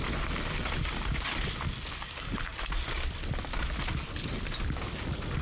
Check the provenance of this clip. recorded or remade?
recorded